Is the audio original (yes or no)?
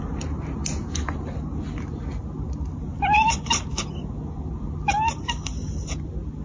yes